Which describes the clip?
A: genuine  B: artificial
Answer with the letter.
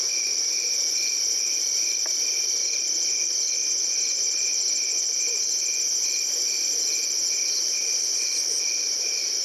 B